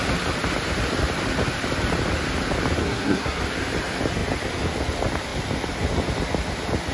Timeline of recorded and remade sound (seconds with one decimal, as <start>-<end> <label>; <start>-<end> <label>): 0.0-2.8 recorded; 2.8-3.4 remade; 3.4-6.9 recorded